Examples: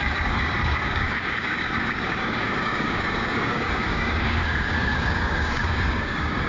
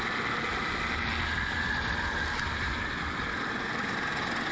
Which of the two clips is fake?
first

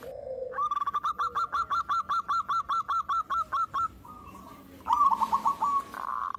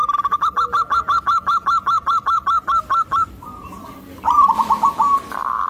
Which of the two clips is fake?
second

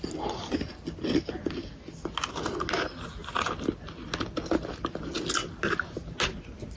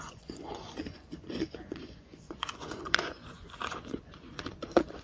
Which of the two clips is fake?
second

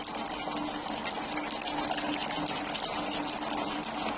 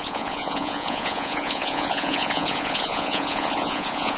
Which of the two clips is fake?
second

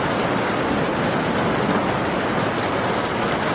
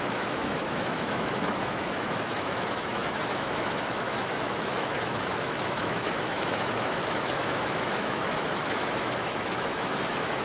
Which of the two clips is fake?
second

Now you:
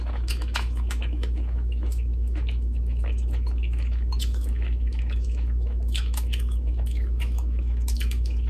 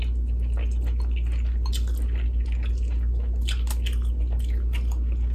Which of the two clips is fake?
first